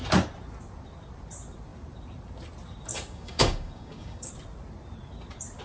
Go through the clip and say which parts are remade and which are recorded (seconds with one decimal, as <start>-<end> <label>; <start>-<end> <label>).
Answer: 0.0-2.9 recorded; 2.9-4.3 remade; 4.3-5.6 recorded